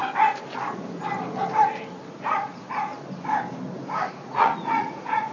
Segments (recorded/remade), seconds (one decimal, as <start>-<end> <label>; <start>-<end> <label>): 0.0-2.1 recorded; 2.1-2.9 remade; 2.9-4.1 recorded; 4.1-5.3 remade